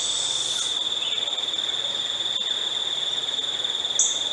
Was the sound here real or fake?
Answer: real